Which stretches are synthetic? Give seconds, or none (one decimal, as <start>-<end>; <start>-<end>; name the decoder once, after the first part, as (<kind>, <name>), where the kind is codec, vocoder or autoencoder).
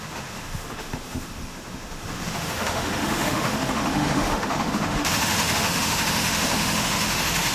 0.0-7.5 (autoencoder, DAC-VAE)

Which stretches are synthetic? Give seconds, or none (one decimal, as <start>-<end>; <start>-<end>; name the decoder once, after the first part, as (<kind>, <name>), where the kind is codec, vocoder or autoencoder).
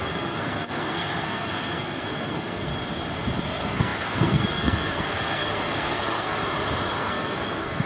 0.0-2.7 (codec, SNAC); 3.4-6.4; 7.0-7.9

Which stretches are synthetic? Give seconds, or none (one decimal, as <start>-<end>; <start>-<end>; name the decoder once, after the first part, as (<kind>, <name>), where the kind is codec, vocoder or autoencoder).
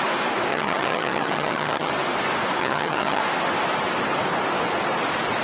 0.5-1.9 (vocoder, HiFi-GAN); 2.6-3.2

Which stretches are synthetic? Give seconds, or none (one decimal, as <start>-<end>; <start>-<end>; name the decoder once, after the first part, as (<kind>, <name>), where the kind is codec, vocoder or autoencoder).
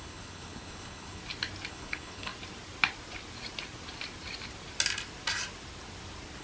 0.0-1.2 (codec, HILCodec); 1.7-2.3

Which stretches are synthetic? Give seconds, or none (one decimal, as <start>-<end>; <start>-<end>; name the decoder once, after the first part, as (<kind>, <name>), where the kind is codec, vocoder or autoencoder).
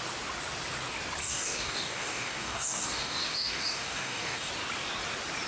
1.2-4.5 (codec, DAC)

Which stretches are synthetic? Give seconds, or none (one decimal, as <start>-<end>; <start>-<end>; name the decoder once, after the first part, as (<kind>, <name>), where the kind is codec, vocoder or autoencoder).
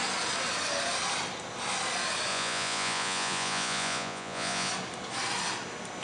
2.3-4.7 (vocoder, Vocos)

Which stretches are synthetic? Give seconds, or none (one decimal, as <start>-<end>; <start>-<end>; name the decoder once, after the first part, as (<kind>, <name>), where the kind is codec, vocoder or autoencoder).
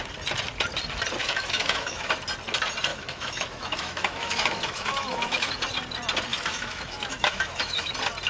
1.2-2.1 (autoencoder, DAC-VAE); 2.9-5.5; 6.3-7.9